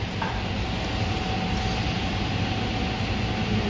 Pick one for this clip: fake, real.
real